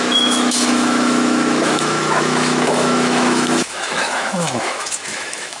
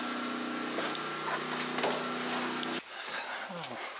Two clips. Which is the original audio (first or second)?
second